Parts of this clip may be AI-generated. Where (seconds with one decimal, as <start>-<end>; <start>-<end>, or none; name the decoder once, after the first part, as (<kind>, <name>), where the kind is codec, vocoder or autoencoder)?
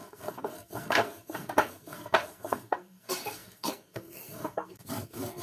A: 0.0-5.4 (codec, SNAC)